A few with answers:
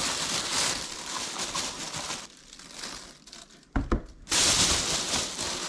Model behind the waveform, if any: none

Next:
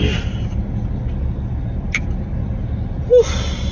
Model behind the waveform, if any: none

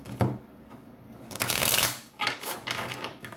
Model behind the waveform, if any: codec, DAC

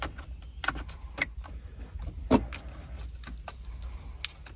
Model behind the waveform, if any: none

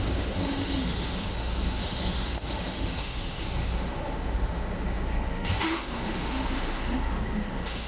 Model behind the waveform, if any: autoencoder, DAC-VAE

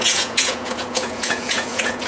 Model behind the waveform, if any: vocoder, Vocos